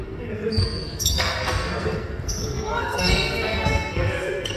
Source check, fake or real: fake